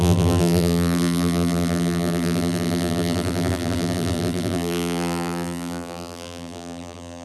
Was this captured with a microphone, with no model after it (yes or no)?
no